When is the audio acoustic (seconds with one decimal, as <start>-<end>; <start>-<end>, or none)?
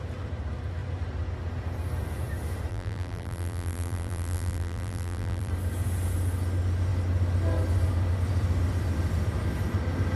0.0-2.7; 5.5-10.2